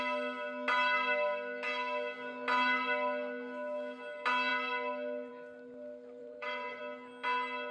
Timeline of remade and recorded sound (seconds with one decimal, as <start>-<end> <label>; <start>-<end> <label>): 0.0-6.2 recorded; 6.2-6.8 remade; 6.8-7.7 recorded